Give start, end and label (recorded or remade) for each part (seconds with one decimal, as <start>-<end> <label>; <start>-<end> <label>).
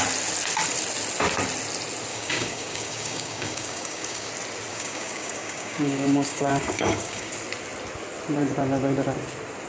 0.0-2.1 recorded; 2.1-4.3 remade; 4.3-4.7 recorded; 4.7-7.3 remade; 7.3-9.7 recorded